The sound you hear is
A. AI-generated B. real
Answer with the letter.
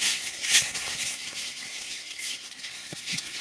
A